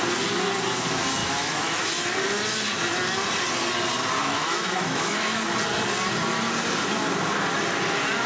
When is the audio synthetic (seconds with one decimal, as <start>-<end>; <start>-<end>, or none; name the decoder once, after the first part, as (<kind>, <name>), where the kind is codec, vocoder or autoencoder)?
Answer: 1.2-1.8 (autoencoder, DAC-VAE); 4.2-5.4